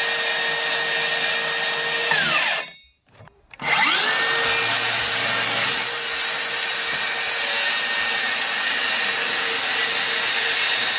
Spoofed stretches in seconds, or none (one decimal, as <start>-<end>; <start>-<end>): 2.0-3.5